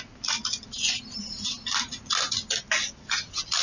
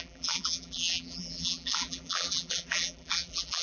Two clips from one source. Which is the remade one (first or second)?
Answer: second